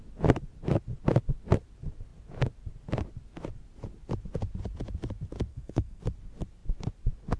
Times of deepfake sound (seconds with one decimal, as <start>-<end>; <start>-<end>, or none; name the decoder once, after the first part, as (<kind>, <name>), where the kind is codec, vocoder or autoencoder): 5.5-6.0 (codec, SNAC)